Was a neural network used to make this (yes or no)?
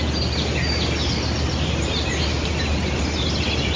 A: no